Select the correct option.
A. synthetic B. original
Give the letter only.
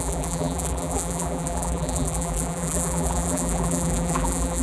A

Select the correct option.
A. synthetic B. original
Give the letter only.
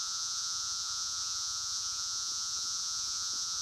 A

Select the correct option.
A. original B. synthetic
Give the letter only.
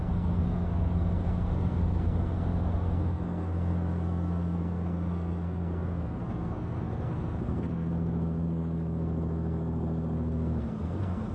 B